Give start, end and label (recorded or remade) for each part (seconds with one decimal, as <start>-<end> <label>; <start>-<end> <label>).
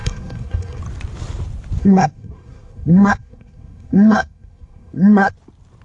0.0-0.8 remade; 0.8-1.8 recorded; 1.8-5.3 remade; 5.3-5.8 recorded